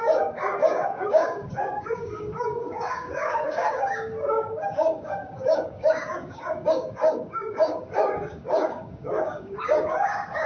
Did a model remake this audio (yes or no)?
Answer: yes